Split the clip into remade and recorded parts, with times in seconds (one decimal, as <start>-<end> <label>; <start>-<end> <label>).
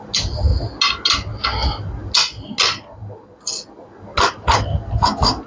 0.0-5.5 recorded